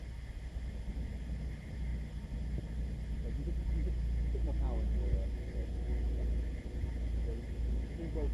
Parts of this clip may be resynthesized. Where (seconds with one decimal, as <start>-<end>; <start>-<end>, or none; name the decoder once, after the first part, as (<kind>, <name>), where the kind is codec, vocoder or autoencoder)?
none